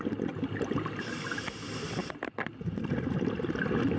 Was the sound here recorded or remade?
recorded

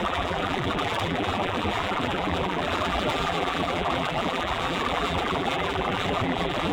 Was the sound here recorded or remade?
remade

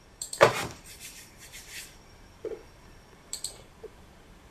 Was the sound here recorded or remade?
remade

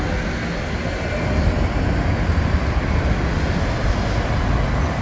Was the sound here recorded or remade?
recorded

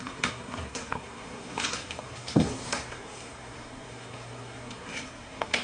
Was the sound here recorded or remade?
remade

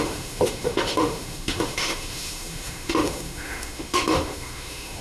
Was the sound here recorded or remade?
remade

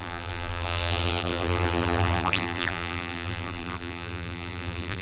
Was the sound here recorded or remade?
remade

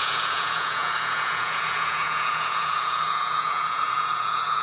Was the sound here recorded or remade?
remade